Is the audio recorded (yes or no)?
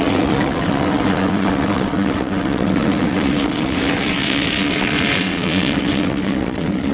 no